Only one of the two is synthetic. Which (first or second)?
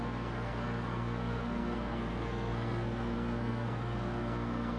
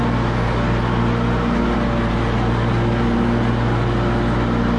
first